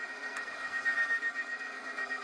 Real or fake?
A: fake